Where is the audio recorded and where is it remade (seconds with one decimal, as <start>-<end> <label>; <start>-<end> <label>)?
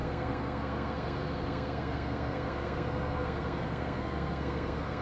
0.0-5.0 remade